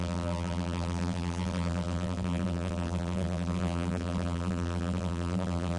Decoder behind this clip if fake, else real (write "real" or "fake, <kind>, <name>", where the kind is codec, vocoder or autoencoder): fake, vocoder, BigVGAN v2